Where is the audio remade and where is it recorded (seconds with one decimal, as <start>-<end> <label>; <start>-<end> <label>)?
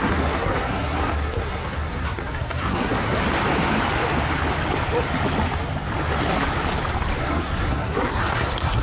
0.0-3.1 remade; 3.1-7.2 recorded; 7.2-8.8 remade